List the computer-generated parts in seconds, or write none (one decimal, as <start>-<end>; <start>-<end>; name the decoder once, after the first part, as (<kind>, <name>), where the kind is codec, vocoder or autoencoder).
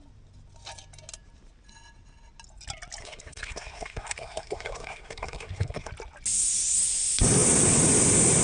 3.0-5.9 (codec, SNAC)